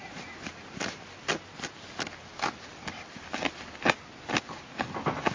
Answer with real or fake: real